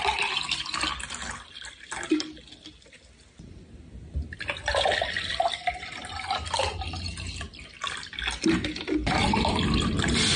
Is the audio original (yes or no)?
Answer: yes